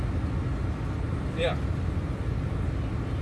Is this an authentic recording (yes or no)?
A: yes